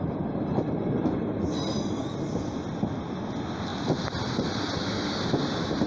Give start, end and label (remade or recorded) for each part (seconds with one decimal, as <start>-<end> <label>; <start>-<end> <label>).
0.0-5.9 recorded